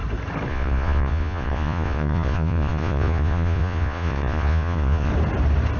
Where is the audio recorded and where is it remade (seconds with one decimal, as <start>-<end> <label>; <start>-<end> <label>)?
0.0-0.5 recorded; 0.5-5.1 remade; 5.1-5.8 recorded